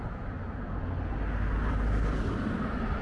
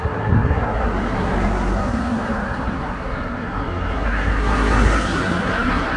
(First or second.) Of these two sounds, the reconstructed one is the second